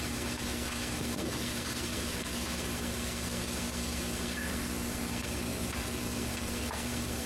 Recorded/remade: remade